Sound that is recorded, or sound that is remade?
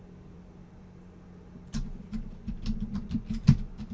remade